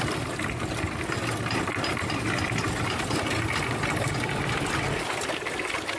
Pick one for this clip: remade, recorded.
recorded